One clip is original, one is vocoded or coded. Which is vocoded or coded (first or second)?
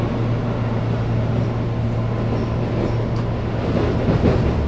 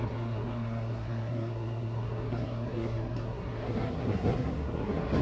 second